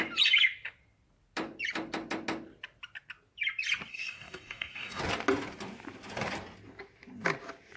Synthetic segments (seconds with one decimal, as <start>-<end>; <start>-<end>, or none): 3.9-5.0